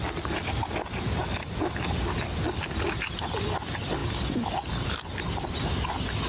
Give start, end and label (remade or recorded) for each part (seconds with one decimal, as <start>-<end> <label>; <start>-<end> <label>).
0.0-6.3 recorded